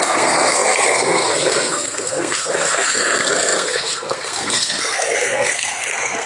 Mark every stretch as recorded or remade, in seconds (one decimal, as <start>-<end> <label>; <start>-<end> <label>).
0.0-6.3 remade